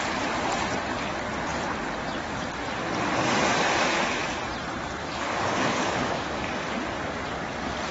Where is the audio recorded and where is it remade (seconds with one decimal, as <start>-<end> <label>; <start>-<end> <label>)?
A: 0.0-5.0 recorded; 5.0-6.7 remade; 6.7-7.9 recorded